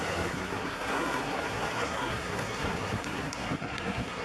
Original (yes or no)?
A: no